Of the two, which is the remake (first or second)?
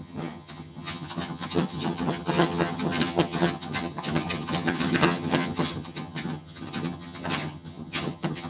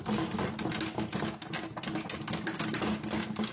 first